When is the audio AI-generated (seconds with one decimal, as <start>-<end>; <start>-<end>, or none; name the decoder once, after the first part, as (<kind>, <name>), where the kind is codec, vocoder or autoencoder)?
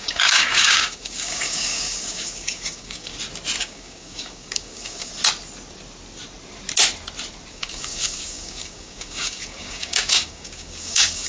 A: 0.0-3.1 (codec, DAC); 3.6-5.1; 7.5-11.3